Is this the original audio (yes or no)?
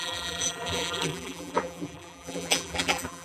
no